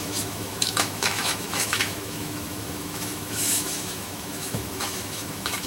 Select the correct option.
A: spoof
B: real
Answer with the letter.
A